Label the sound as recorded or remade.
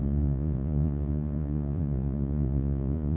remade